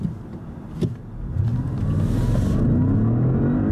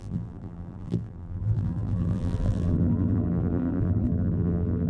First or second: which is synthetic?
second